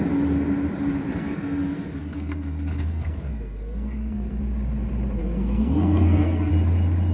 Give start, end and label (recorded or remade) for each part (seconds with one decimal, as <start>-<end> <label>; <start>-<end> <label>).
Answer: 0.0-1.1 recorded; 1.1-4.4 remade; 4.4-5.2 recorded; 5.2-6.5 remade; 6.5-7.1 recorded